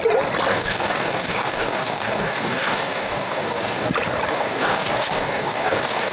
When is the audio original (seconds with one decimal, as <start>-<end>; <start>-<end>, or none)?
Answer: 0.0-0.5; 3.9-4.3